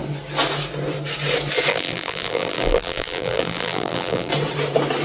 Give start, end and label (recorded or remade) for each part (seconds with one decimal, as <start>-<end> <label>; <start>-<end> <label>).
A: 0.0-1.7 recorded; 1.7-4.3 remade; 4.3-5.0 recorded